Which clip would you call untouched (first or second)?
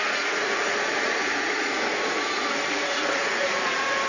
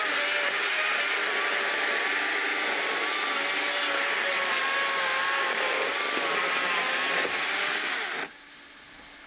second